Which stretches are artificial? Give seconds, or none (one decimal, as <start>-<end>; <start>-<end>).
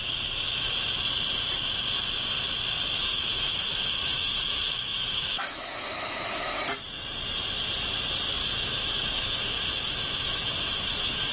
3.0-6.6; 8.4-11.3